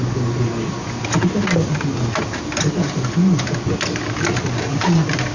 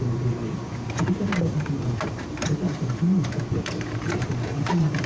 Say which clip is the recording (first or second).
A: first